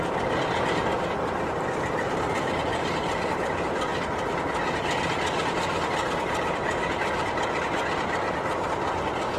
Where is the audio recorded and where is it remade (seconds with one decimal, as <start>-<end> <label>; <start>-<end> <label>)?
0.0-2.7 remade; 2.7-3.2 recorded; 3.2-9.4 remade